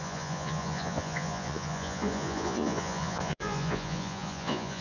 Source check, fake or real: fake